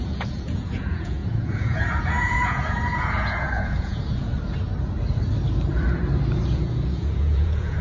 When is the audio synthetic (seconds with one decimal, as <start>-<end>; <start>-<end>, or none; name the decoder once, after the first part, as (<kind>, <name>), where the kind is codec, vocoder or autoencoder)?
0.0-4.3 (vocoder, Vocos); 6.5-7.8